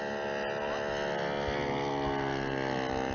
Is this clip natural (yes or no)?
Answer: yes